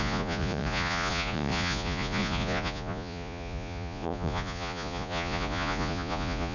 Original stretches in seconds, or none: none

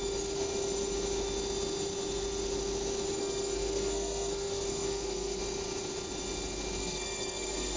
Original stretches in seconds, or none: 0.0-3.2; 5.4-6.8